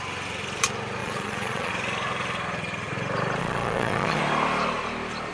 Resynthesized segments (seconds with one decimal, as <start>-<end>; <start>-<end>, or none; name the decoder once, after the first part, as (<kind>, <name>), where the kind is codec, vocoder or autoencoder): 1.0-1.7 (vocoder, Vocos); 3.4-4.2